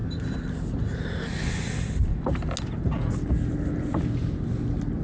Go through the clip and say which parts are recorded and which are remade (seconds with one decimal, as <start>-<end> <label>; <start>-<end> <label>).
0.0-5.0 recorded